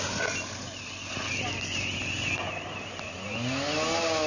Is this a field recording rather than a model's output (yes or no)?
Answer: yes